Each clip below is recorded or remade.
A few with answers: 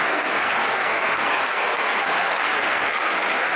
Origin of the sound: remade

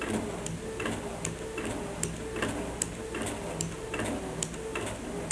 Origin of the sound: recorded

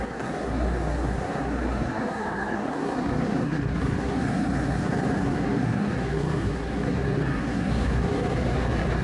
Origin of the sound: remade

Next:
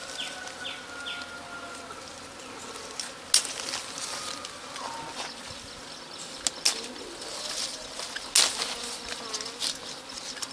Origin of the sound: recorded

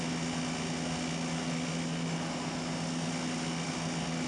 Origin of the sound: recorded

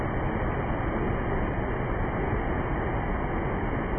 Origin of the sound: recorded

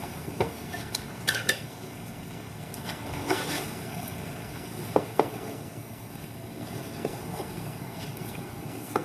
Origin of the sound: remade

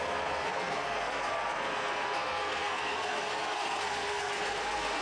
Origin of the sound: remade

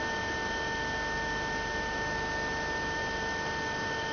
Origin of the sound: recorded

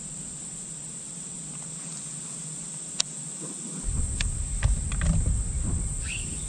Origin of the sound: recorded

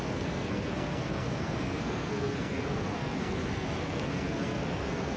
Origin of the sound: remade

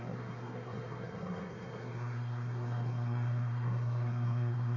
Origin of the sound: remade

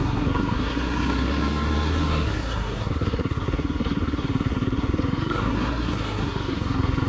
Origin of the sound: remade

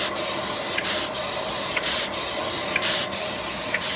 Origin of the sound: recorded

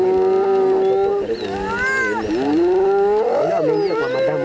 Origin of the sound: recorded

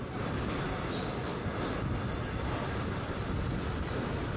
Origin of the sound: recorded